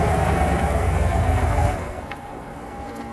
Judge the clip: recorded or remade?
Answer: remade